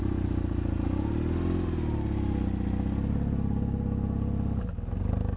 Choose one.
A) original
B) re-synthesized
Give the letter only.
A